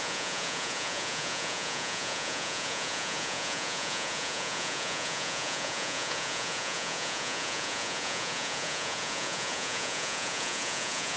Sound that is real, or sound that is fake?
fake